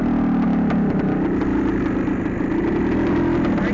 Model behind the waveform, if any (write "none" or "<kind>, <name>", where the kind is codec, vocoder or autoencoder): none